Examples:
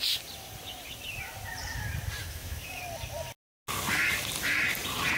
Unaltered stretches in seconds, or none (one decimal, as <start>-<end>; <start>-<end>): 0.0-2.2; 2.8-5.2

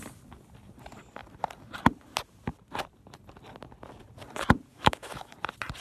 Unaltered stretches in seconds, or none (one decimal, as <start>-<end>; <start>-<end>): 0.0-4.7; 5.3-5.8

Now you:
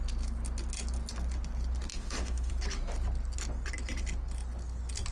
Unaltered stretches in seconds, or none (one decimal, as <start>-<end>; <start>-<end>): 0.0-1.9; 2.5-5.1

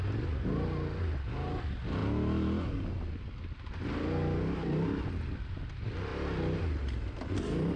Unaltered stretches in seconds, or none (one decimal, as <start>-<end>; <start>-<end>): 0.0-7.8

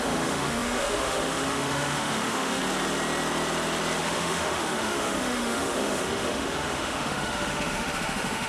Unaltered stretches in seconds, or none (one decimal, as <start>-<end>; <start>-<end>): 2.6-4.0